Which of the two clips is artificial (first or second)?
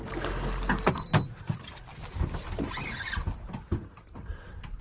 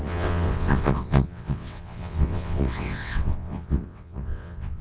second